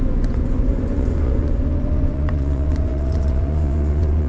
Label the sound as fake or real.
fake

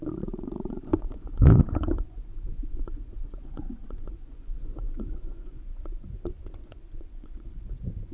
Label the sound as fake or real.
fake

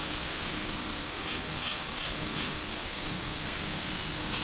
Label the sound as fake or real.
fake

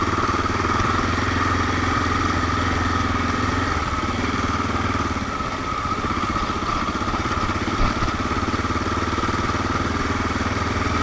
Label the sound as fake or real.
fake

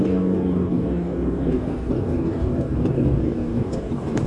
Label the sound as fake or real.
fake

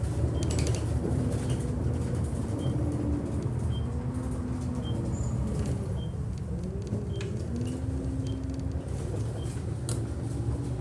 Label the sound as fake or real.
real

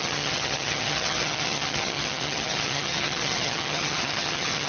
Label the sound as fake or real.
fake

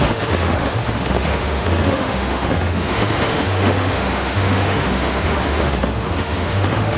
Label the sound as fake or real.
fake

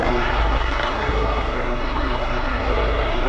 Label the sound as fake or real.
fake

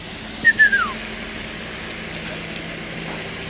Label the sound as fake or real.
real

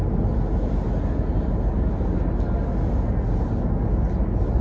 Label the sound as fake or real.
real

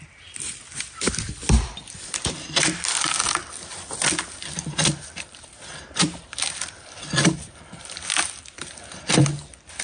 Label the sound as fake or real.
fake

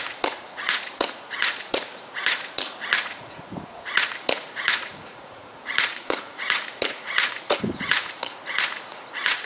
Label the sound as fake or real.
fake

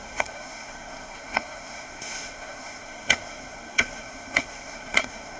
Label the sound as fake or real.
fake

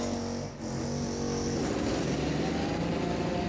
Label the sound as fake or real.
real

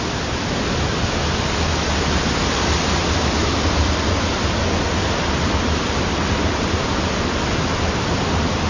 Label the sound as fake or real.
real